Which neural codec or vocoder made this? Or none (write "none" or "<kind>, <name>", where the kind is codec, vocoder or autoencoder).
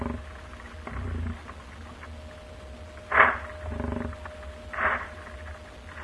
none